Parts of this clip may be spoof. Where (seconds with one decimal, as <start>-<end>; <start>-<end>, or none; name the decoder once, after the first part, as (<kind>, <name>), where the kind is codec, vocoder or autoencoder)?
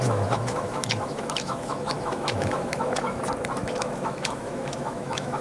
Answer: 0.0-3.2 (autoencoder, DAC-VAE); 3.6-5.4